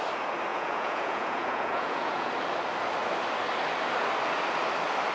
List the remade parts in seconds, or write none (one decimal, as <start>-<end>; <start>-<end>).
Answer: 0.5-2.3

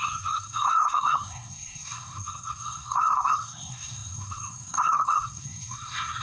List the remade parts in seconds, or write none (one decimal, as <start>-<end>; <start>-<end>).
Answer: 0.0-6.2

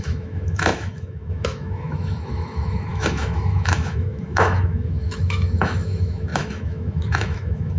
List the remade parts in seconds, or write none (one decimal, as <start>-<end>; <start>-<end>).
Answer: 0.0-7.8

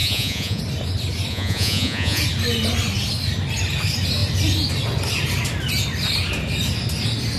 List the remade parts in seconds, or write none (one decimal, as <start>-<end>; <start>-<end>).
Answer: 0.0-0.6; 1.3-2.2

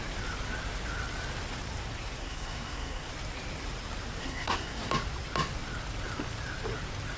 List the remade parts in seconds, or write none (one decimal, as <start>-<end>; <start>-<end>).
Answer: 2.2-3.1; 4.2-4.9